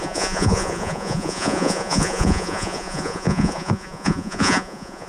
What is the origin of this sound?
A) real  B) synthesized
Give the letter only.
B